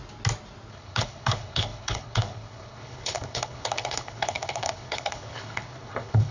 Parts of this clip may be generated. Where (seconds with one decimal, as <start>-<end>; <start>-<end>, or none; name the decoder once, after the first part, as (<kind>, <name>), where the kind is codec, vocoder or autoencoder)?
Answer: 0.7-6.3 (codec, HILCodec)